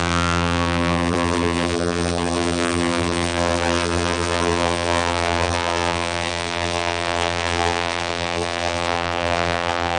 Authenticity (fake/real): fake